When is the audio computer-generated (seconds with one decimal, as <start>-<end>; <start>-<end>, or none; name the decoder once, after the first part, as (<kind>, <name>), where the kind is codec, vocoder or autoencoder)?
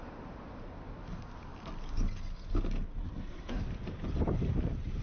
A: 3.0-3.6 (codec, SNAC)